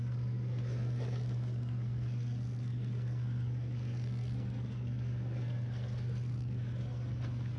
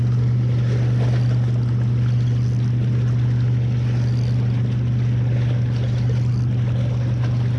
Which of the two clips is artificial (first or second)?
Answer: first